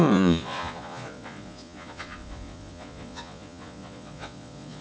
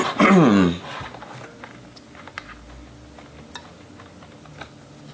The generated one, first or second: first